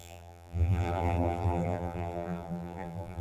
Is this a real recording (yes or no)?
no